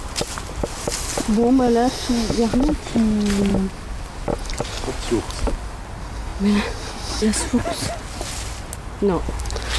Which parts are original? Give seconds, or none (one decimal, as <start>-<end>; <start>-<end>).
0.0-9.8